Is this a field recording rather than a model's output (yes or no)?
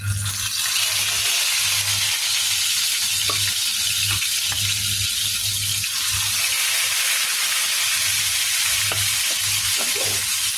yes